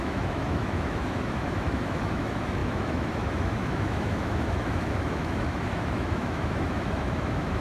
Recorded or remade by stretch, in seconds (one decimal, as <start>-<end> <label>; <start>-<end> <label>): 0.0-7.6 remade